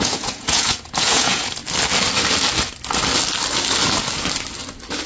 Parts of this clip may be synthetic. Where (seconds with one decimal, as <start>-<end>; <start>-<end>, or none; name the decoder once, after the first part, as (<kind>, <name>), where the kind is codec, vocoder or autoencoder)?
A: 0.0-1.6 (vocoder, Vocos)